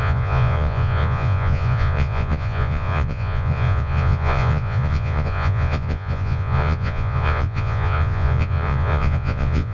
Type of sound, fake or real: fake